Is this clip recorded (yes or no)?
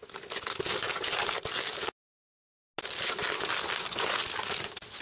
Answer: yes